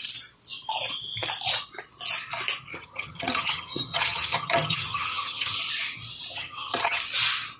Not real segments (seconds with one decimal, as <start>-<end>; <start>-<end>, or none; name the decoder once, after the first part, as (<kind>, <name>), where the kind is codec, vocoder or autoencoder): 2.7-5.6 (vocoder, HiFi-GAN); 6.3-7.0